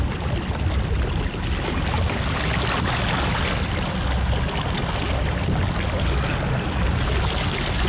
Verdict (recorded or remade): recorded